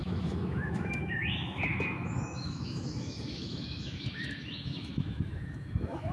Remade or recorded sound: remade